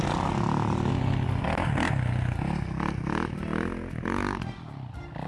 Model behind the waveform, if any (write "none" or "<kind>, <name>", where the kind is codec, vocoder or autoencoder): none